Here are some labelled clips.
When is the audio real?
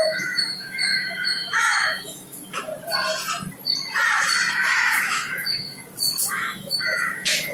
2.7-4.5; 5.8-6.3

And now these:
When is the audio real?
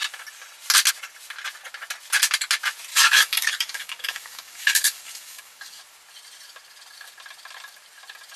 0.0-2.9; 5.8-8.4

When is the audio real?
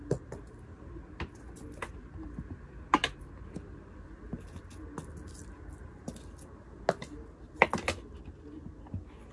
0.0-9.3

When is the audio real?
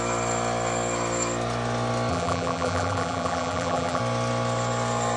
0.0-2.1; 4.0-5.2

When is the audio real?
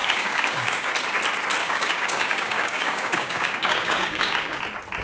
0.9-1.6; 4.6-5.0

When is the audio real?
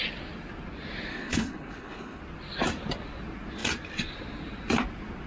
0.0-1.1; 2.2-5.3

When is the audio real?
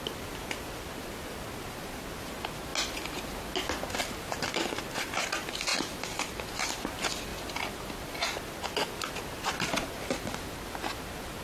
0.0-5.7; 6.4-7.3; 7.9-11.4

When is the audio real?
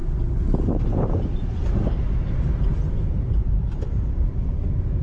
0.0-0.8